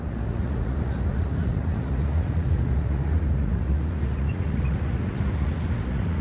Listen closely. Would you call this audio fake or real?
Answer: fake